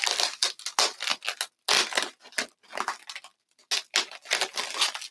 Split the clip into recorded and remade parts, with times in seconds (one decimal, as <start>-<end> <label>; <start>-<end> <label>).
0.0-5.1 recorded